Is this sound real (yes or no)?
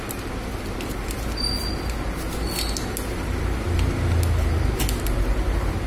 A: yes